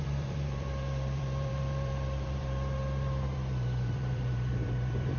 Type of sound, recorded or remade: remade